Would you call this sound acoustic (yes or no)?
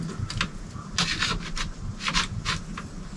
yes